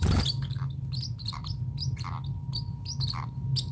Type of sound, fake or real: real